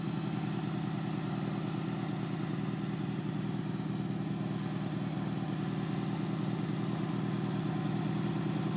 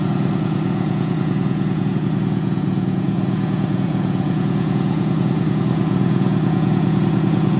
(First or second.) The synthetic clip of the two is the second